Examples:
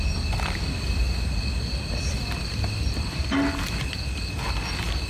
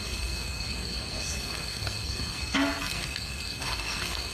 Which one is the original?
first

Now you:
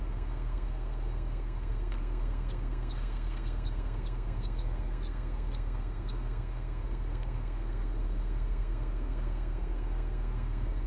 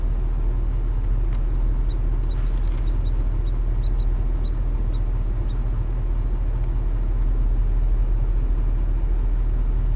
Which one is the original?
second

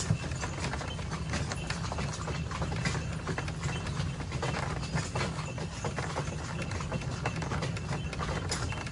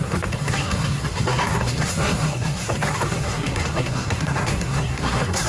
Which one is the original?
first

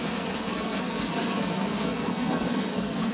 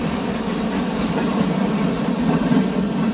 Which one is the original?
second